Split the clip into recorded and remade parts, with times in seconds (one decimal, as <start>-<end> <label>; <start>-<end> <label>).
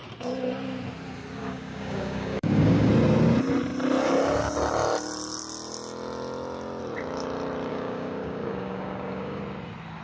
0.0-1.4 recorded; 1.4-2.9 remade; 2.9-7.7 recorded; 7.7-9.4 remade; 9.4-10.0 recorded